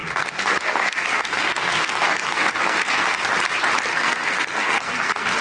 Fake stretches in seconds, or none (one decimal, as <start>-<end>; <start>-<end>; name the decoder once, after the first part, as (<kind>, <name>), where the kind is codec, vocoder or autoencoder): 0.0-3.2 (codec, SNAC); 3.9-5.4

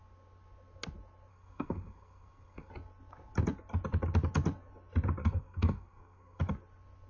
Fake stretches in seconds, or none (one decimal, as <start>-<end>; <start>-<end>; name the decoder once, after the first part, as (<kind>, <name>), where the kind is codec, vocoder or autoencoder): 1.3-2.7 (codec, SNAC); 5.2-6.4

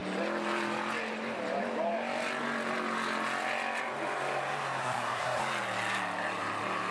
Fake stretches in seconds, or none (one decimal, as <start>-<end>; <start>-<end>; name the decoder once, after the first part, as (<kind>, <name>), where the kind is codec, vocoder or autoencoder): 4.8-5.4 (codec, SNAC)

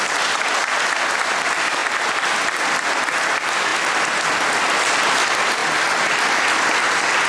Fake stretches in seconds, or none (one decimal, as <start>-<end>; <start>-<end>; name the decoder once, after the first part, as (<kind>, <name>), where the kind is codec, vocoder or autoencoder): none

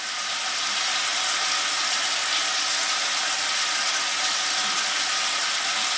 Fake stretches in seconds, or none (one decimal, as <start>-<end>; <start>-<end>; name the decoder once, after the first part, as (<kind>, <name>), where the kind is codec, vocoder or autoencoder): none

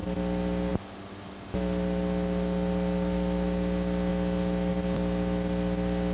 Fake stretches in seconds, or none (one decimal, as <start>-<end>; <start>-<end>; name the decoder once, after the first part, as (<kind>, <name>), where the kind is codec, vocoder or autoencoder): none

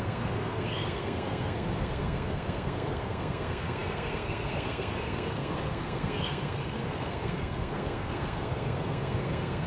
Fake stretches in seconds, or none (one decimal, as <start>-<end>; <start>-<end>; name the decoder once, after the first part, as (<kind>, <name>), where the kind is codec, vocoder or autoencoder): 0.0-9.7 (codec, SNAC)

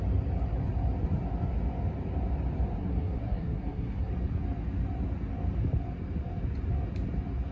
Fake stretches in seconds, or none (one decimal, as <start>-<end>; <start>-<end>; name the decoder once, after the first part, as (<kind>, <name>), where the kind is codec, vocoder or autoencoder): 2.8-4.1 (codec, SNAC)